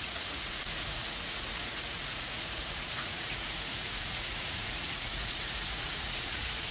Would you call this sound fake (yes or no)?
yes